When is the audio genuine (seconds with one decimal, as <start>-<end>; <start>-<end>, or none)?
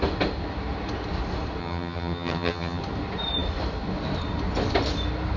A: 0.0-1.6; 2.8-5.4